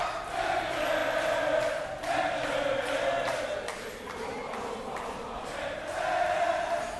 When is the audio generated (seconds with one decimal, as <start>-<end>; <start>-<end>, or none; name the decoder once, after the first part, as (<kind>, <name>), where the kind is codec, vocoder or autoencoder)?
none